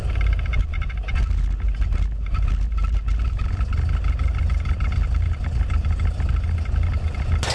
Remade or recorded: recorded